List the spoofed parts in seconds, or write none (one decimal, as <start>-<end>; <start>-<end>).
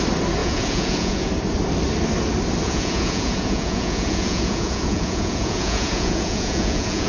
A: 0.4-1.3; 2.6-7.1